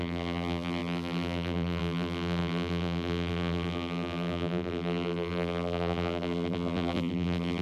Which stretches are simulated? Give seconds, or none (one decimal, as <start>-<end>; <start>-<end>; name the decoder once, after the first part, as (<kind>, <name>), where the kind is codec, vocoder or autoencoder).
0.0-7.6 (vocoder, BigVGAN v2)